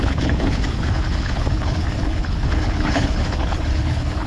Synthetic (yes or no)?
yes